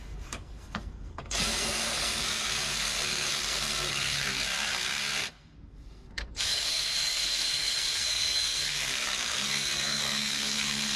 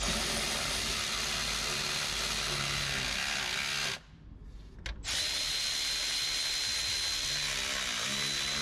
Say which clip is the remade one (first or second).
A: first